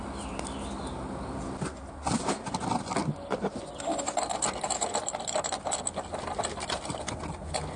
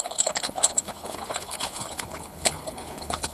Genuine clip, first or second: first